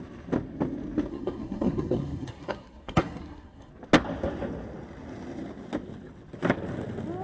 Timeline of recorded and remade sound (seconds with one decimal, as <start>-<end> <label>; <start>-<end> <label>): 0.0-1.1 recorded; 1.1-3.7 remade; 3.7-7.2 recorded